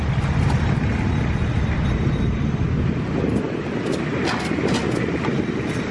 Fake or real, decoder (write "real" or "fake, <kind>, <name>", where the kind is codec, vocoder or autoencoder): real